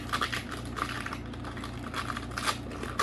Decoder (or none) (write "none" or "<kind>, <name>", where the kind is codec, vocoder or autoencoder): none